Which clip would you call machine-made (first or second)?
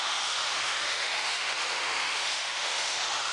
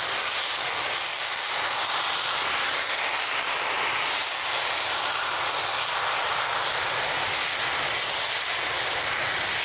first